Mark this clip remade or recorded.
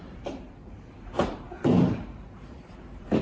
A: remade